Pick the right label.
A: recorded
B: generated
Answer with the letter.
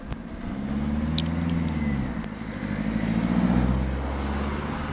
A